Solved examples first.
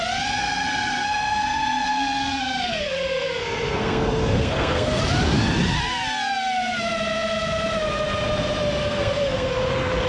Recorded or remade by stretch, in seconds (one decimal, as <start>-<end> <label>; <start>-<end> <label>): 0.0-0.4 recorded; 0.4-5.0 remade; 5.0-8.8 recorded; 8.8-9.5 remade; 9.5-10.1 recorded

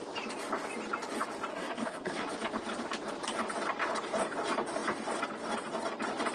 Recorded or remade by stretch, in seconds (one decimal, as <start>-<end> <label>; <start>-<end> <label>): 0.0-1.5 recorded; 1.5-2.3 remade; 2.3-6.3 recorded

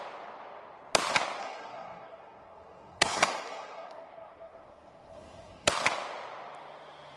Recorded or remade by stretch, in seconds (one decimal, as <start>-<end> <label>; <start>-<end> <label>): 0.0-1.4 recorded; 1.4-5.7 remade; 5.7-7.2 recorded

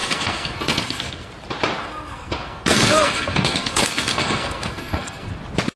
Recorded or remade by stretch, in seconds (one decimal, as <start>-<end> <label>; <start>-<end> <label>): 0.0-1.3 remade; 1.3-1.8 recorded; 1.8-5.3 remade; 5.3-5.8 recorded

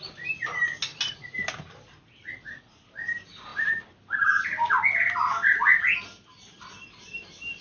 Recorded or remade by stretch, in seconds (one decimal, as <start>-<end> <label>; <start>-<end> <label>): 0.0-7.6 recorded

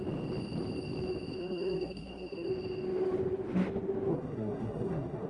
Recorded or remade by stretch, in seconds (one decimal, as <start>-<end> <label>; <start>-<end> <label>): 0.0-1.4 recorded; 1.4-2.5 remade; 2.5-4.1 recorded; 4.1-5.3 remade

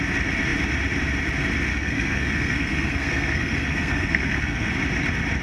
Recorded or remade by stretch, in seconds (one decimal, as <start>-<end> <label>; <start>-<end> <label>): 0.0-1.7 recorded; 1.7-4.7 remade; 4.7-5.4 recorded

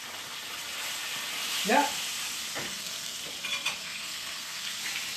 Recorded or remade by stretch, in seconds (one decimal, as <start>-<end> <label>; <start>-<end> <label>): 0.0-2.7 recorded; 2.7-3.2 remade; 3.2-3.8 recorded; 3.8-4.8 remade; 4.8-5.2 recorded